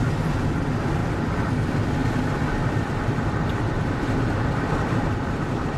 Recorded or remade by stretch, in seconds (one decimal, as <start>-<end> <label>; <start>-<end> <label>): 0.0-1.0 recorded; 1.0-1.5 remade; 1.5-2.0 recorded; 2.0-5.8 remade